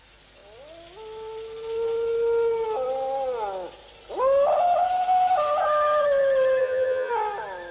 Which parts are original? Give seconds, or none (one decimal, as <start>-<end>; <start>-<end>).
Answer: 0.0-6.6; 7.1-7.7

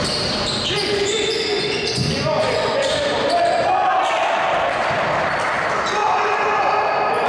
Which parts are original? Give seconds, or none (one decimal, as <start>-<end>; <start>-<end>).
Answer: 0.0-0.8; 3.0-6.0; 6.8-7.3

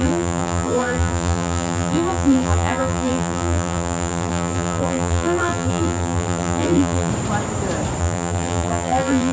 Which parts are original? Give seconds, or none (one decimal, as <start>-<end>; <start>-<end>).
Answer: 7.1-8.0

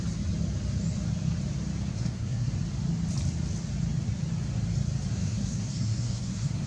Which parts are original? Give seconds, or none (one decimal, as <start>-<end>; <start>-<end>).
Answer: 0.0-1.9; 2.5-5.1

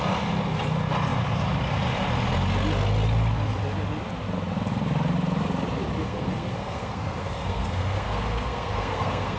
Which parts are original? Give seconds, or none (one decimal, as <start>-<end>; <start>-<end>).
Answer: 0.0-6.0

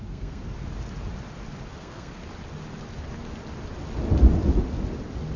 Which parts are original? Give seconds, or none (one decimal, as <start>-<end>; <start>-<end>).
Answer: 0.4-1.8; 2.2-5.4

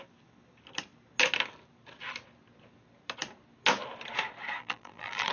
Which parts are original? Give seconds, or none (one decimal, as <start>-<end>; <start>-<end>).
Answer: 0.0-4.6

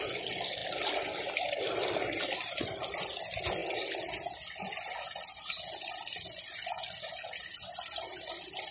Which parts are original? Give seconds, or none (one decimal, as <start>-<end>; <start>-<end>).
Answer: 0.0-8.7